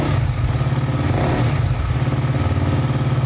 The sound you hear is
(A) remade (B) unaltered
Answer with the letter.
B